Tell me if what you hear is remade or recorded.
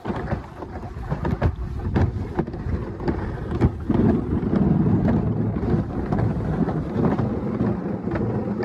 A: recorded